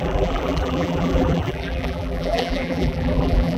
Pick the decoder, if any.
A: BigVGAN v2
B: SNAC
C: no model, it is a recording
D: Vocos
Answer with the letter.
A